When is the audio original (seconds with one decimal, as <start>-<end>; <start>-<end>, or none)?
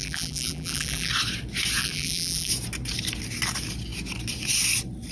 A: 1.1-1.8; 2.5-5.1